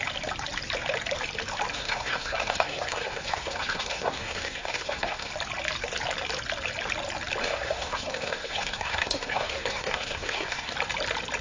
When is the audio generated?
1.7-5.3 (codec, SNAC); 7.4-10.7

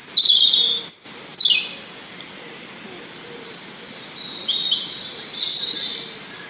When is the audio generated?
none